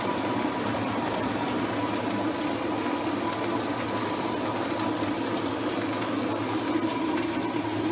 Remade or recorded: recorded